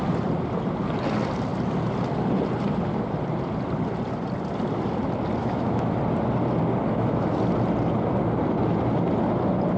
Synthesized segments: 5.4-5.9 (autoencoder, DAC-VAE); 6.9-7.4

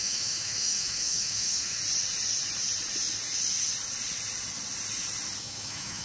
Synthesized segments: 0.0-1.8 (autoencoder, DAC-VAE); 5.4-6.0

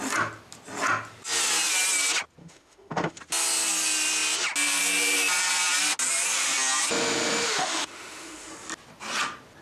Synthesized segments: 2.4-3.2 (autoencoder, DAC-VAE); 7.6-8.5

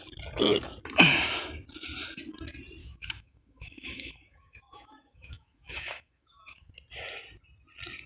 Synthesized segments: 2.8-6.7 (autoencoder, DAC-VAE)

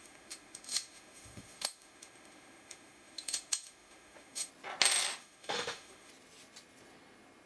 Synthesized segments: 0.0-4.5 (autoencoder, DAC-VAE); 5.1-6.1